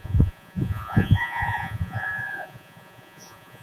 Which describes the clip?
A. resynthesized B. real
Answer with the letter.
A